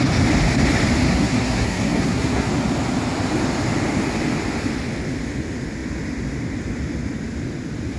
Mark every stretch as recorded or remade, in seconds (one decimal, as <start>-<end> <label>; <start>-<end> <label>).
0.0-1.1 recorded; 1.1-2.5 remade; 2.5-8.0 recorded